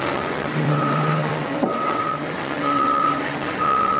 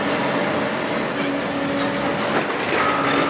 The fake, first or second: first